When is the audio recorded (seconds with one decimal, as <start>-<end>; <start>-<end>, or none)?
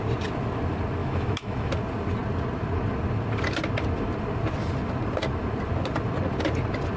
0.0-1.0; 1.7-7.0